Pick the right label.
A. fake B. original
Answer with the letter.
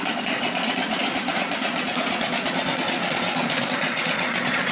A